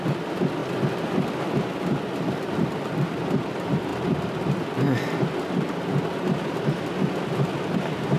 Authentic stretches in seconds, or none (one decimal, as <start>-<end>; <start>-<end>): 0.6-2.3